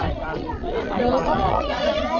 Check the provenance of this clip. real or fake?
fake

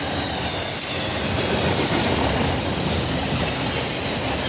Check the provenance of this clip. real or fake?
real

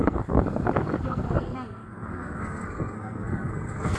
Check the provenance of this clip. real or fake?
fake